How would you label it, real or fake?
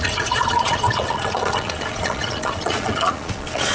fake